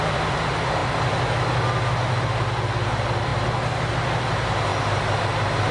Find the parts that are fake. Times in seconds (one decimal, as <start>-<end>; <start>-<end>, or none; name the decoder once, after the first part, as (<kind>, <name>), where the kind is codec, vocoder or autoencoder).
none